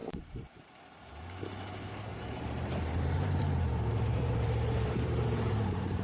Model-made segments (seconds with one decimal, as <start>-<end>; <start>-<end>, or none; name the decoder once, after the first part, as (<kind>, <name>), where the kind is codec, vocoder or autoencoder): 0.0-0.8 (vocoder, BigVGAN v2); 2.1-6.0

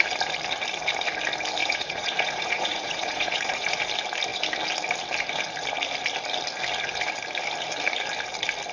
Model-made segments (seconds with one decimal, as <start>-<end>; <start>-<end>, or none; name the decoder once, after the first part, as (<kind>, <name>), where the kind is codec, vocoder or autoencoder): 1.6-3.8 (vocoder, Vocos)

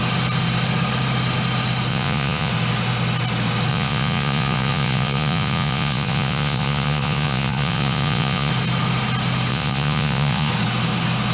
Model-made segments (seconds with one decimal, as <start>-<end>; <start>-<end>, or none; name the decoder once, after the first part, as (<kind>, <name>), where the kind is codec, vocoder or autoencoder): 1.9-2.5 (vocoder, Vocos); 3.7-8.5; 9.5-10.5

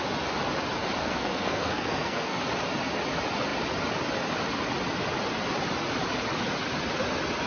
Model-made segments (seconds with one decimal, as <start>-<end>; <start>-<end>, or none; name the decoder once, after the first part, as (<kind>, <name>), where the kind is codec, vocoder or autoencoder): 1.0-2.4 (codec, SNAC)

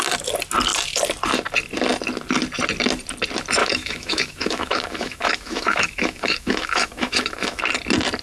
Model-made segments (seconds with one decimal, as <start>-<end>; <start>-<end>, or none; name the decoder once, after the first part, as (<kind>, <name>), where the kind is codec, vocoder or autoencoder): 3.6-7.6 (autoencoder, DAC-VAE)